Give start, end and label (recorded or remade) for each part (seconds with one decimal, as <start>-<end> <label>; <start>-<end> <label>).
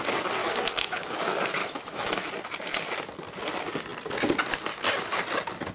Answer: 0.0-0.4 recorded; 0.4-1.1 remade; 1.1-1.6 recorded; 1.6-2.3 remade; 2.3-5.7 recorded